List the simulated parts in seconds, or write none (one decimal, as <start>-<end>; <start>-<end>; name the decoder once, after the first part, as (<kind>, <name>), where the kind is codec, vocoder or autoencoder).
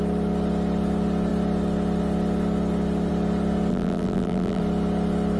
3.7-4.6 (vocoder, BigVGAN v2)